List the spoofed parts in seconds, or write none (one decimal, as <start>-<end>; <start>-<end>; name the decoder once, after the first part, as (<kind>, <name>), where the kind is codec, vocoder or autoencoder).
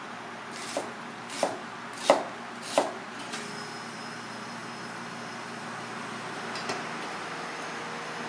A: none